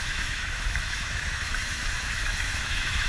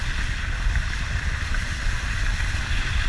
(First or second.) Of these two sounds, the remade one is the first